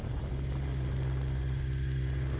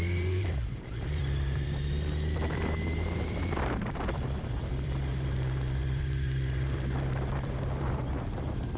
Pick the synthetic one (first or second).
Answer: second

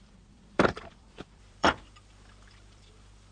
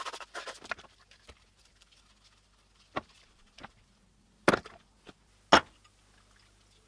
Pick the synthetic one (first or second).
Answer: first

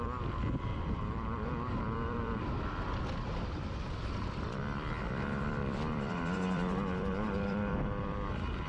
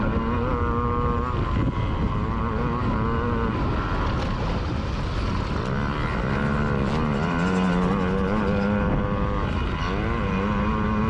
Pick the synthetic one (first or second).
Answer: first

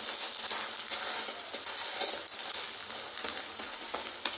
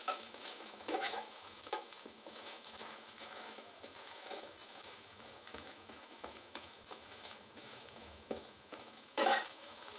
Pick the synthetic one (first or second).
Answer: second